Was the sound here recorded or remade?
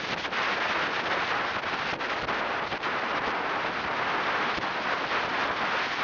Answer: recorded